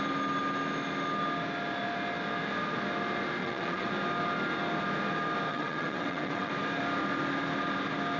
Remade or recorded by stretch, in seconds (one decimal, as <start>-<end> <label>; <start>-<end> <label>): 0.0-3.4 recorded; 3.4-3.9 remade; 3.9-5.5 recorded; 5.5-6.5 remade; 6.5-8.2 recorded

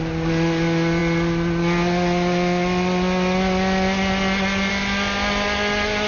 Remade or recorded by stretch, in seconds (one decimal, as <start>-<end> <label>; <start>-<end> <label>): 0.0-6.1 recorded

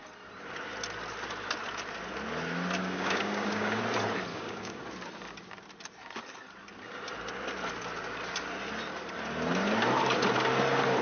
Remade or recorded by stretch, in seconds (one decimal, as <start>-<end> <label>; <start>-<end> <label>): 0.0-2.8 recorded; 2.8-3.8 remade; 3.8-4.3 recorded; 4.3-4.8 remade; 4.8-11.0 recorded